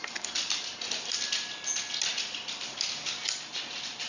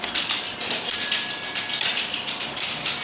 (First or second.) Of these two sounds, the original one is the second